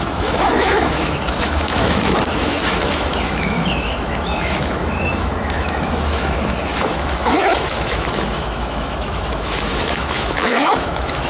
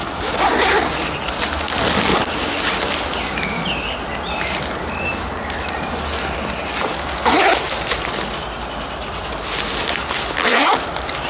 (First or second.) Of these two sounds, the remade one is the first